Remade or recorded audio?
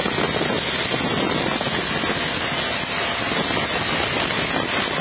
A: recorded